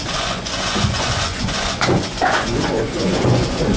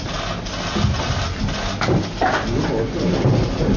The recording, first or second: second